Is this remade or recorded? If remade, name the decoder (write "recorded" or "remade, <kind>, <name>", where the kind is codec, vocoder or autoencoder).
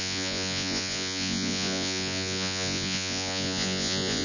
remade, vocoder, Vocos